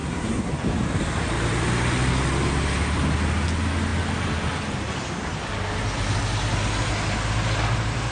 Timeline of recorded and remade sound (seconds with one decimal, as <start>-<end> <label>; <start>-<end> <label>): 0.0-0.5 remade; 0.5-8.1 recorded